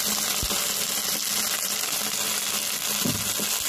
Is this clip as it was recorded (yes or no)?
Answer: yes